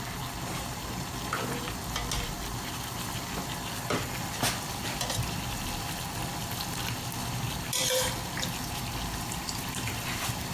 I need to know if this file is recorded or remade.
recorded